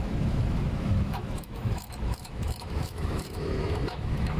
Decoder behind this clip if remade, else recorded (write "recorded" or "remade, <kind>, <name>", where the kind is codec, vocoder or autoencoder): remade, autoencoder, DAC-VAE